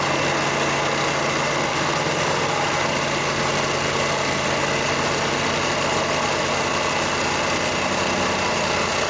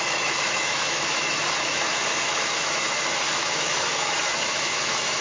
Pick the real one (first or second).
first